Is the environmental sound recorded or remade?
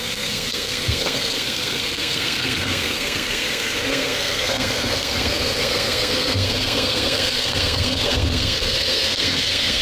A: remade